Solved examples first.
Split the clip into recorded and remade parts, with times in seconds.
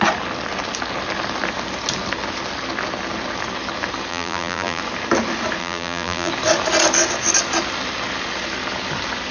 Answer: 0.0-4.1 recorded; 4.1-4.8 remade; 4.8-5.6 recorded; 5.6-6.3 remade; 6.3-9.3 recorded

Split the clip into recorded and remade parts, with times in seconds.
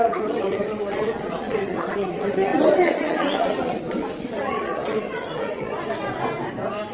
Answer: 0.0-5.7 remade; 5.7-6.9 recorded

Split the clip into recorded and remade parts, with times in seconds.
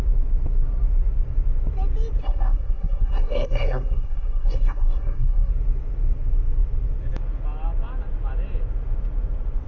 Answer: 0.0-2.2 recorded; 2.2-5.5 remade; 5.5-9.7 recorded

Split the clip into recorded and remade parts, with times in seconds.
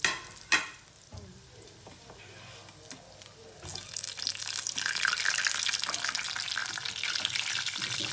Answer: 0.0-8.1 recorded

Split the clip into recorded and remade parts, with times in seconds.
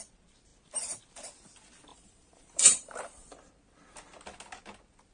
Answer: 0.0-1.9 recorded; 1.9-3.5 remade; 3.5-5.1 recorded